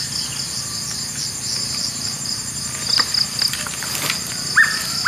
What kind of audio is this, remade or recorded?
recorded